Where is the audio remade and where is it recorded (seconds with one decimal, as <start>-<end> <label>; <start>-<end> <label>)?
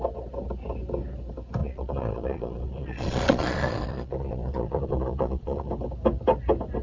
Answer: 0.0-1.6 recorded; 1.6-5.7 remade; 5.7-6.8 recorded